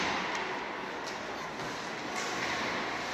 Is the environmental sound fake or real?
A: real